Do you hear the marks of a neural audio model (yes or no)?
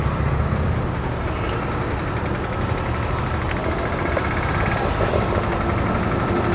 no